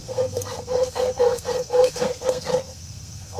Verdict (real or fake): fake